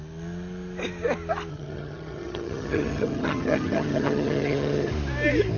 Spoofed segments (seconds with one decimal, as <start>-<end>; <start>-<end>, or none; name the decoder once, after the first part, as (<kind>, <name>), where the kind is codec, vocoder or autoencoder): 1.5-4.9 (vocoder, HiFi-GAN)